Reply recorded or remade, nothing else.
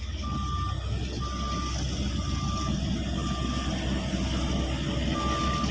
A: recorded